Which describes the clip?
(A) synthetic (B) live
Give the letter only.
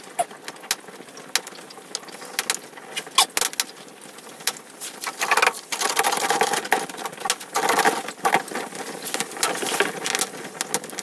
B